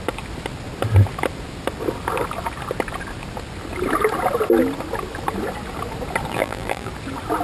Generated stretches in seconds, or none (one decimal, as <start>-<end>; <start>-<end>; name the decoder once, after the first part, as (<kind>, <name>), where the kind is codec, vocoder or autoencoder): 6.3-6.9 (vocoder, BigVGAN v2)